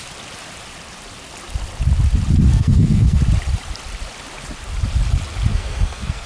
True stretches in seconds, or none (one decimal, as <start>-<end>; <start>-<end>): 0.0-2.5; 3.2-5.5